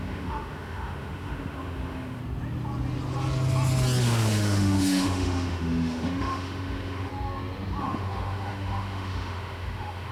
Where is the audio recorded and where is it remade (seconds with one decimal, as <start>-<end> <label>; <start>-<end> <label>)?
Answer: 0.0-2.2 remade; 2.2-4.0 recorded; 4.0-7.1 remade; 7.1-7.8 recorded; 7.8-10.1 remade